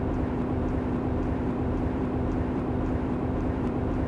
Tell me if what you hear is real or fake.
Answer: fake